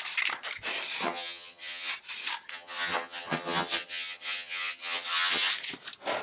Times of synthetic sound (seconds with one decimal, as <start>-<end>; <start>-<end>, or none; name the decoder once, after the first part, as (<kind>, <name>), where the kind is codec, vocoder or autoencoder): 1.0-1.9 (vocoder, HiFi-GAN); 2.5-5.5